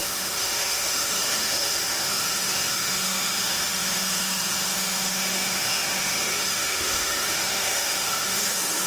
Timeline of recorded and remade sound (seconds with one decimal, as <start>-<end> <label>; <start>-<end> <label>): 0.0-8.9 remade

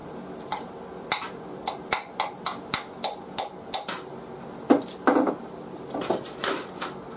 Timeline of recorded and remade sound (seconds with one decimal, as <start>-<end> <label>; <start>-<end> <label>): 0.0-7.2 recorded

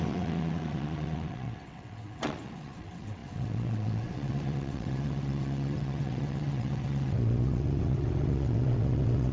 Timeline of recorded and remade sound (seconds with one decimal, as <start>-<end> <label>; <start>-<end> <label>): 0.0-9.3 remade

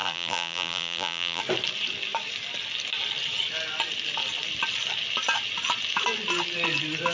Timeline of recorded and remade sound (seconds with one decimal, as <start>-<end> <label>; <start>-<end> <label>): 0.0-1.4 remade; 1.4-7.1 recorded

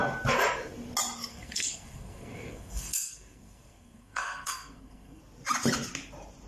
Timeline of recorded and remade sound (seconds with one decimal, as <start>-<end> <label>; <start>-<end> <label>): 0.0-1.3 recorded; 1.3-5.2 remade; 5.2-6.5 recorded

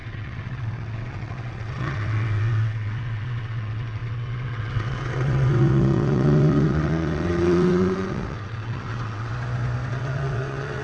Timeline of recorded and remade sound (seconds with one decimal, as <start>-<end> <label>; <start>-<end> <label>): 0.0-9.3 remade; 9.3-9.9 recorded; 9.9-10.8 remade

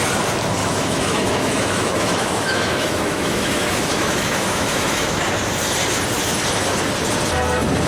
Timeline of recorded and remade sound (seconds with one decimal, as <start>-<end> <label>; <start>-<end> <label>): 0.0-0.6 recorded; 0.6-5.3 remade; 5.3-7.9 recorded